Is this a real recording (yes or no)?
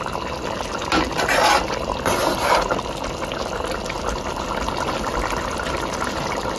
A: yes